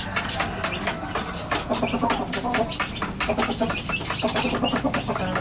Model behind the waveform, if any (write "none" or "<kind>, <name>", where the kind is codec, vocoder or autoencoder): none